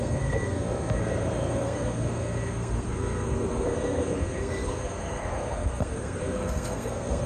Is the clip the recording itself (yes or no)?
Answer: no